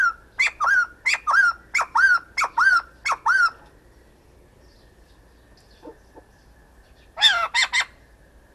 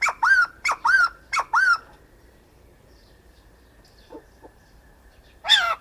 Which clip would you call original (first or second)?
first